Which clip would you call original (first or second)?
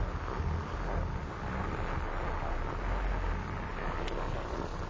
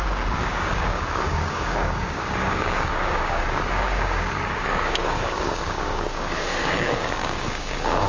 first